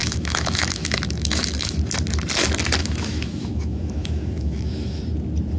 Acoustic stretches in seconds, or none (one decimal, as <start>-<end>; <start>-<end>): 1.8-2.8; 5.0-5.6